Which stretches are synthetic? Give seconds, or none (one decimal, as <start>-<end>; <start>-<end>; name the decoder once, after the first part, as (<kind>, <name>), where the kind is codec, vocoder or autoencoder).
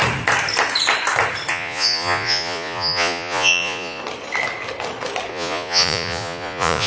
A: 1.5-4.0 (vocoder, Vocos); 5.3-6.9